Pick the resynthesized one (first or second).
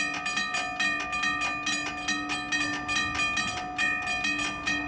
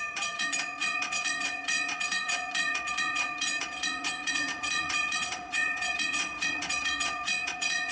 second